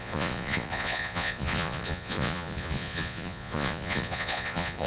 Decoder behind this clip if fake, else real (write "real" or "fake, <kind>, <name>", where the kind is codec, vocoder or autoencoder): fake, vocoder, Vocos